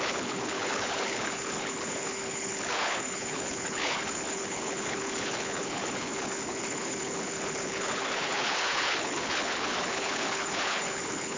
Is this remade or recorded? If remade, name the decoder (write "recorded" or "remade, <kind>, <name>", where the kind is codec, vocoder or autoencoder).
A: remade, codec, HILCodec